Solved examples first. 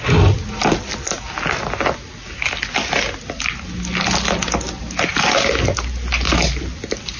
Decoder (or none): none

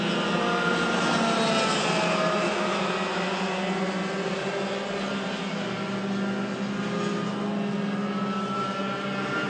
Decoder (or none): none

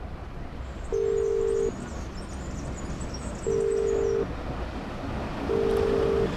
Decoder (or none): none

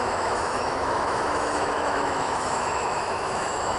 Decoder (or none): autoencoder, DAC-VAE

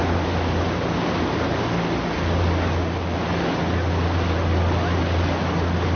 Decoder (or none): none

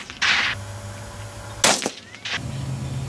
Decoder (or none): none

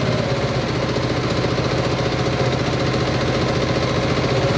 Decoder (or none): none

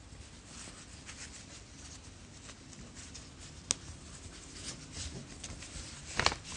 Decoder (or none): none